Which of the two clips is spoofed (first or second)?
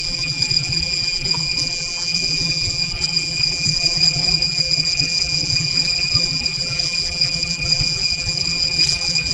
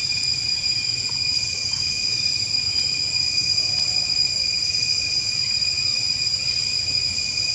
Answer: first